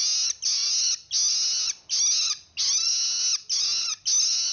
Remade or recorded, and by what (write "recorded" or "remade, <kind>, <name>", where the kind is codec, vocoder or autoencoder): recorded